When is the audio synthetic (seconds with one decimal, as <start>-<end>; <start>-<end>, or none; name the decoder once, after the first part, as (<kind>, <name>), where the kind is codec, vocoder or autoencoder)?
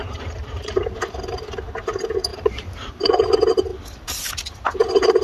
0.0-0.8 (vocoder, BigVGAN v2); 2.3-3.2